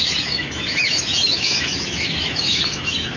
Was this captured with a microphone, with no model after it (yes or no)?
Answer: no